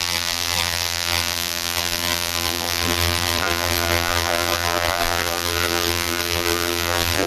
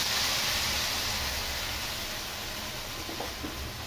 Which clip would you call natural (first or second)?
second